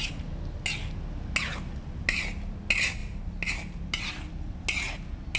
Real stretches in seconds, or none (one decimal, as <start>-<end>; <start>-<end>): 0.0-5.4

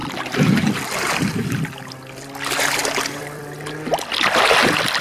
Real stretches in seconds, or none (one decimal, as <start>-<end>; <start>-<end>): 1.4-2.8; 3.4-5.0

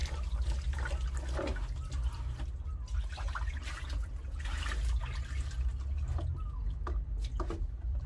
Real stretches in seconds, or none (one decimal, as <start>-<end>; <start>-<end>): 0.0-8.1